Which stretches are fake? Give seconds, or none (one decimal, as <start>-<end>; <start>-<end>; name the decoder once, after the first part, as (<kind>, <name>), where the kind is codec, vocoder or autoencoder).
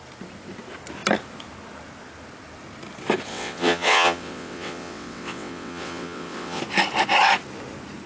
3.3-6.6 (vocoder, WaveNeXt)